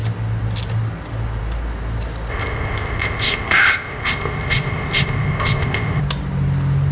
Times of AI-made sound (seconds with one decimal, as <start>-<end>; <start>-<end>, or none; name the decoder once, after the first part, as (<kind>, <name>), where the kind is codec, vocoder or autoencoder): 2.3-6.0 (codec, ZipCodec)